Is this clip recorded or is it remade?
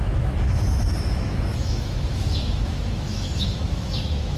remade